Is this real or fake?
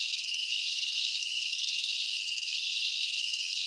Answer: fake